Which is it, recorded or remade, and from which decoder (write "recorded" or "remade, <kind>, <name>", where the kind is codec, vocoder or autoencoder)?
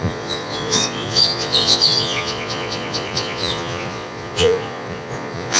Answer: remade, vocoder, Vocos